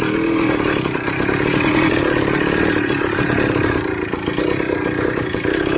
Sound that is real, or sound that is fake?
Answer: real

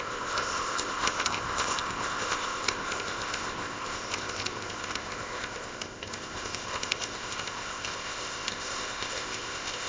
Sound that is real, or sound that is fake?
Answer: fake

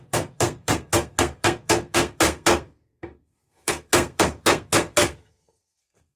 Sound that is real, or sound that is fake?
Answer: fake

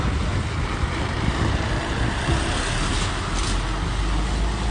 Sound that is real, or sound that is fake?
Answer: real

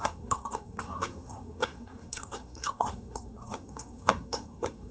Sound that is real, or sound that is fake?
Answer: fake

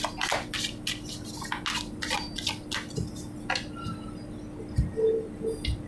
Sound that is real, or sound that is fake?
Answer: real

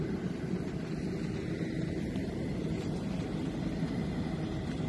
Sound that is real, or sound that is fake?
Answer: real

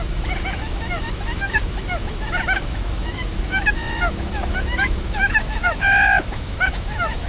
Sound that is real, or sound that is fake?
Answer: fake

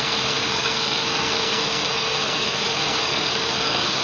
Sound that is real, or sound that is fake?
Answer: fake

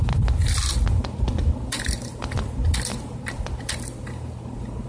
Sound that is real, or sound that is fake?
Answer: fake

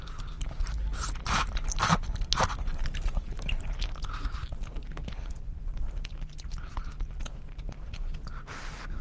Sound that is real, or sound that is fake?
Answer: fake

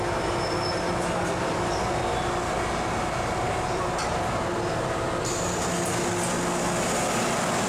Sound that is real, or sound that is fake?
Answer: real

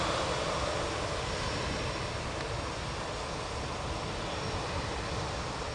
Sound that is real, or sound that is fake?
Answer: real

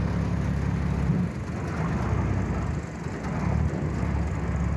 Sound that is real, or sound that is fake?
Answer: real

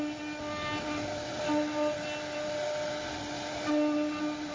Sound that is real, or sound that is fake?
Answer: real